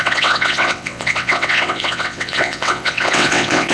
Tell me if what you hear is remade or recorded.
remade